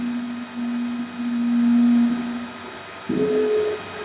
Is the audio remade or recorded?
recorded